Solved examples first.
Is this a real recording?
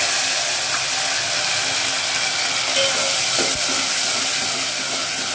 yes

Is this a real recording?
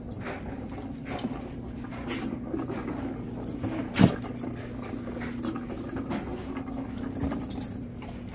yes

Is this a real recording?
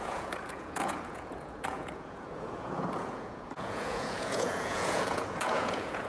no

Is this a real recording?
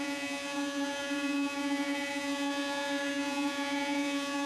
no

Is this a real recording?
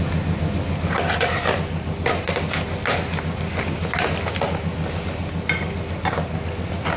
yes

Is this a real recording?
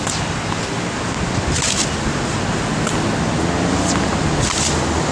yes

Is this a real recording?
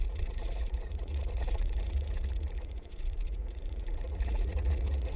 no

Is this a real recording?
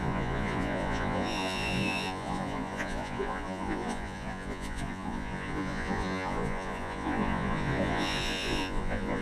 no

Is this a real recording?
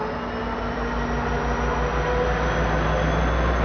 yes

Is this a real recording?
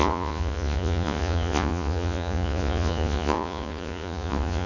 no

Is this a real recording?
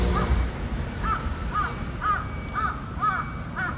yes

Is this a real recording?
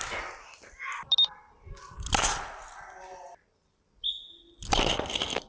yes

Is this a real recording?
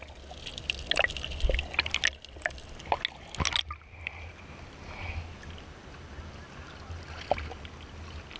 yes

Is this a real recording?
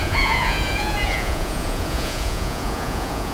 no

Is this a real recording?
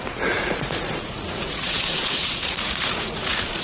no